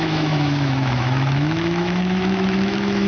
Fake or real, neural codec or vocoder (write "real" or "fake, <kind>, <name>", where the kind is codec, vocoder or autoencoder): fake, autoencoder, DAC-VAE